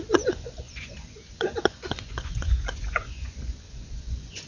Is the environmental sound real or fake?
fake